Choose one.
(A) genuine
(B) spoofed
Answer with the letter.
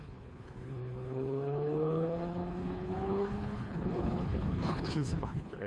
B